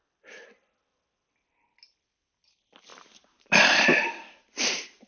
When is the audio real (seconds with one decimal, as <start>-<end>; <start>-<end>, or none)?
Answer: 0.0-2.9